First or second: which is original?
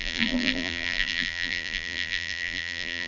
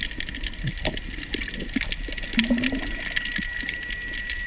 second